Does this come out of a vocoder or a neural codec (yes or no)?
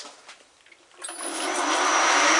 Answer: no